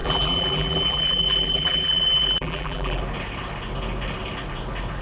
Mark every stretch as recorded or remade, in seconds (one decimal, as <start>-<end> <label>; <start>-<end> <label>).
0.0-3.0 remade; 3.0-5.0 recorded